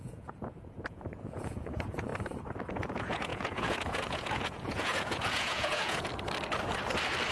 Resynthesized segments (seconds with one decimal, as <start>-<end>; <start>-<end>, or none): 0.0-2.1; 2.7-6.1